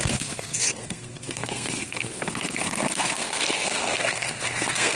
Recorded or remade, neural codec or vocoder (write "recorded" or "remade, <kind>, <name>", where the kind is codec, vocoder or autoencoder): remade, codec, SNAC